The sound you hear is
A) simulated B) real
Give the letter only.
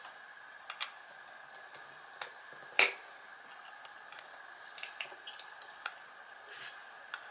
B